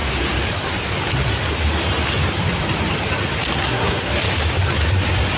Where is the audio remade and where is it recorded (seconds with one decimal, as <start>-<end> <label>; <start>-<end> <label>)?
0.0-3.6 recorded; 3.6-4.1 remade; 4.1-5.4 recorded

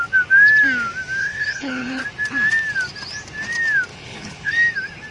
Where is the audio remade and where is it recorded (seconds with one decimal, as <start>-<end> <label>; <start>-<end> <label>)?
0.0-1.2 recorded; 1.2-2.0 remade; 2.0-3.9 recorded; 3.9-4.5 remade; 4.5-5.1 recorded

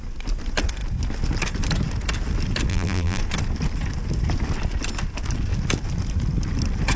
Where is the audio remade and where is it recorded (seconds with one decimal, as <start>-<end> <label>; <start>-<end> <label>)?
0.0-2.7 recorded; 2.7-3.2 remade; 3.2-7.0 recorded

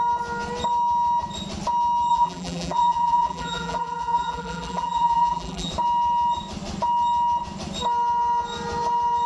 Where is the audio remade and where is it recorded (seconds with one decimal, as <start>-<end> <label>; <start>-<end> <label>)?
0.0-2.1 recorded; 2.1-5.7 remade; 5.7-9.3 recorded

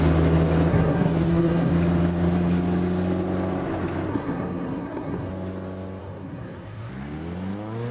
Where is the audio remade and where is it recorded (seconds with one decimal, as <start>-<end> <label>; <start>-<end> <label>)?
0.0-0.7 recorded; 0.7-1.7 remade; 1.7-4.1 recorded; 4.1-5.3 remade; 5.3-6.0 recorded; 6.0-6.9 remade; 6.9-7.9 recorded

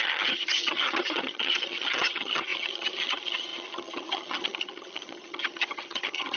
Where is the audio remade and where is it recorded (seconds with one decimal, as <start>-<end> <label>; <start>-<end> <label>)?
0.0-6.4 remade

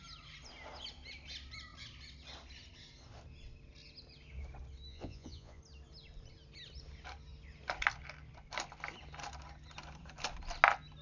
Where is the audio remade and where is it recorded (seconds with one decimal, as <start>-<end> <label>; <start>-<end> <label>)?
0.0-4.9 recorded; 4.9-5.6 remade; 5.6-11.0 recorded